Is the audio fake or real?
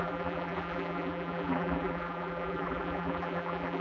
fake